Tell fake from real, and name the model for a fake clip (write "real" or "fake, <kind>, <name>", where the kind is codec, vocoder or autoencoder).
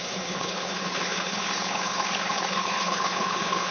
fake, codec, HILCodec